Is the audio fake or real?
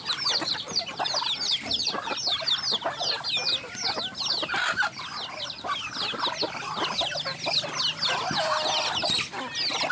real